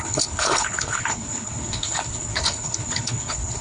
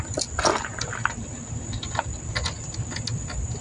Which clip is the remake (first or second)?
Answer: first